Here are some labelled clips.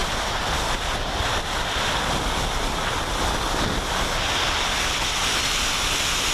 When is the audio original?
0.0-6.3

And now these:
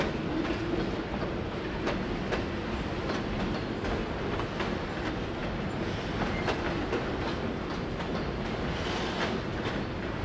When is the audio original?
0.0-10.2

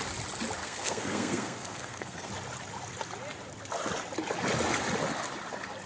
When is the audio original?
0.0-0.6; 2.3-5.9

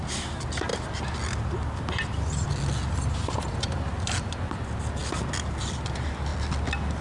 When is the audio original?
0.0-7.0

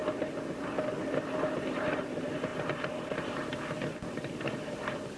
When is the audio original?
0.0-5.2

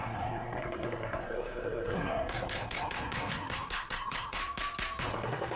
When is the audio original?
4.4-5.0

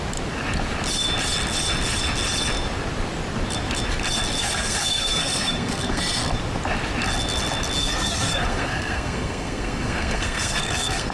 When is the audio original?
0.0-4.4; 6.0-7.8

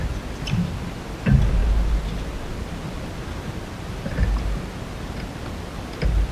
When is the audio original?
0.0-6.3